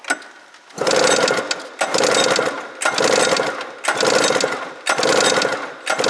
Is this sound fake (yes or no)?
no